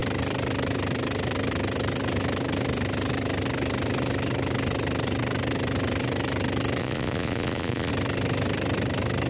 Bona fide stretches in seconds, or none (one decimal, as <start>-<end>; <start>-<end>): 0.0-6.8; 7.9-9.3